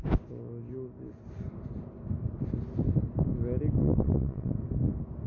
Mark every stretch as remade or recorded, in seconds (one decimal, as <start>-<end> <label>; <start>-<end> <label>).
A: 0.0-3.8 recorded; 3.8-4.5 remade; 4.5-5.3 recorded